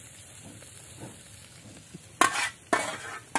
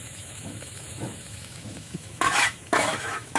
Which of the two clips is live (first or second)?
first